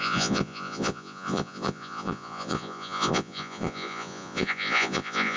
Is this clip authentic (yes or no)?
no